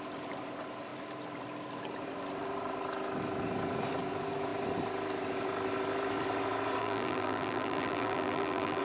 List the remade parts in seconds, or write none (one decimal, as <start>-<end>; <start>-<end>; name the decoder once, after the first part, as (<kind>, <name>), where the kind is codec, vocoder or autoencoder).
6.8-8.8 (vocoder, BigVGAN v2)

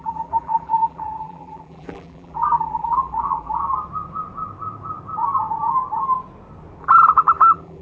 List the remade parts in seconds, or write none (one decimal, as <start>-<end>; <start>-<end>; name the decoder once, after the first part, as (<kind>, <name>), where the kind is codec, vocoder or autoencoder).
0.0-3.6 (vocoder, BigVGAN v2); 6.8-7.8

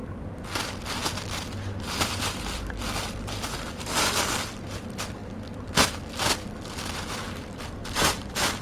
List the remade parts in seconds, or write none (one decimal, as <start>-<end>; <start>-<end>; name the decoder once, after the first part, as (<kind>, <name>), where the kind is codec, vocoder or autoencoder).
1.9-5.2 (vocoder, BigVGAN v2); 7.3-8.6

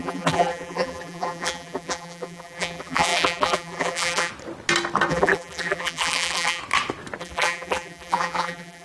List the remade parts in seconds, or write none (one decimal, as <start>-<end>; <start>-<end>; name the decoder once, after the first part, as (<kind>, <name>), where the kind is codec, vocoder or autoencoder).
0.0-4.3 (vocoder, BigVGAN v2); 5.1-6.6; 7.2-8.8

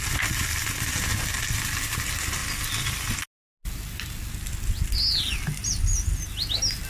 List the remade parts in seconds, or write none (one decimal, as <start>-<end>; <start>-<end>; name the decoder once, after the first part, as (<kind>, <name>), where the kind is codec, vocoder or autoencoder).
none